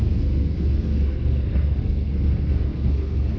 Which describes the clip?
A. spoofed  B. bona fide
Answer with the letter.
A